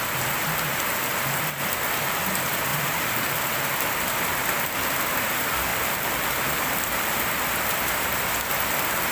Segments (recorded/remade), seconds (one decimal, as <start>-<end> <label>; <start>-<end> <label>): 0.0-2.7 recorded; 2.7-3.5 remade; 3.5-5.7 recorded; 5.7-7.2 remade; 7.2-9.1 recorded